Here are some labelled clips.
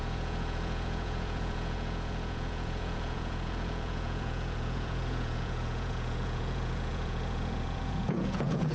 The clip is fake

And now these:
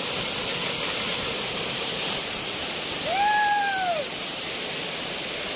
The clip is real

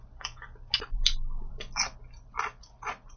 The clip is real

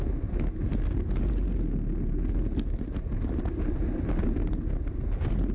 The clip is real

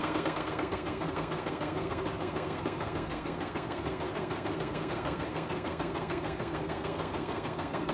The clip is fake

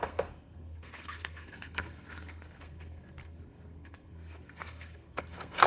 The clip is fake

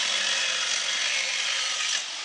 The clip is real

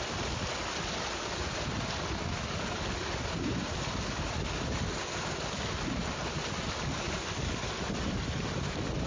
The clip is real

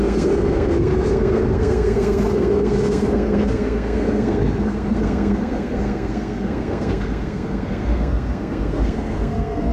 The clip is fake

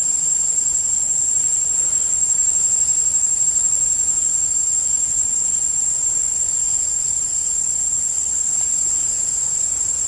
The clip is real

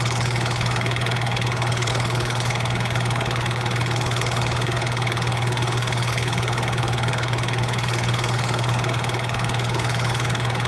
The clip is fake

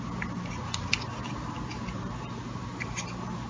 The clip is real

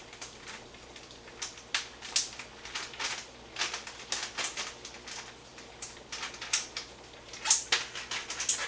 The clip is real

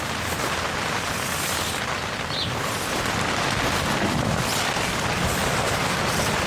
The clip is real